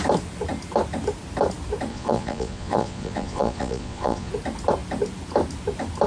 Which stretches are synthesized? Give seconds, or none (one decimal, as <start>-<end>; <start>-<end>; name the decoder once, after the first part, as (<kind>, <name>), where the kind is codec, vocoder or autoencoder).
1.9-4.3 (vocoder, Vocos)

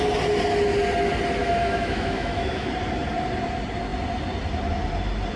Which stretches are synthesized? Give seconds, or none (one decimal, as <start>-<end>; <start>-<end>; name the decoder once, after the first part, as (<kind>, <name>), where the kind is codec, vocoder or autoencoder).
1.4-2.7 (autoencoder, DAC-VAE)

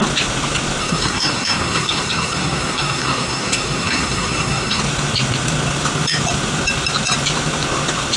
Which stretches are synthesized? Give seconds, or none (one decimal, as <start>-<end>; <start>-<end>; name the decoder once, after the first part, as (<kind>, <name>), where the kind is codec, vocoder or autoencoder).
0.8-4.8 (codec, SNAC)